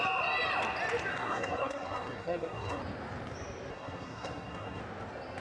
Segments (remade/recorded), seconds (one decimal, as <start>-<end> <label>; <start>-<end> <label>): 0.0-1.1 recorded; 1.1-2.8 remade; 2.8-3.7 recorded; 3.7-4.8 remade; 4.8-5.4 recorded